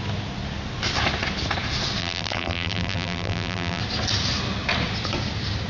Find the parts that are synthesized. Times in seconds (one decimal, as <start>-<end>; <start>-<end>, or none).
2.0-3.8